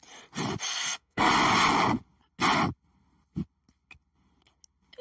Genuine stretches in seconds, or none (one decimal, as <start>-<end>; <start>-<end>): 0.0-0.7; 1.3-5.0